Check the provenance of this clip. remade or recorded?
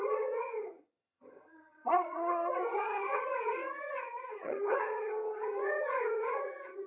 remade